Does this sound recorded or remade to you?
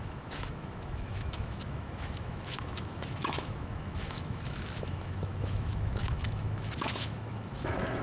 remade